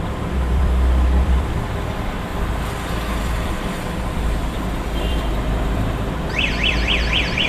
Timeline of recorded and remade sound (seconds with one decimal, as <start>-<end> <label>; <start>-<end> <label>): 0.0-2.3 remade; 2.3-3.2 recorded; 3.2-7.5 remade